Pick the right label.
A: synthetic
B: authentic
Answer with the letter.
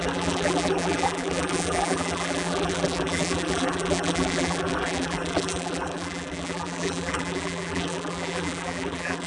A